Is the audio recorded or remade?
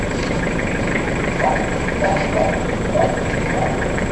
remade